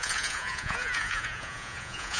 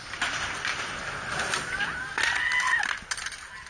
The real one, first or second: second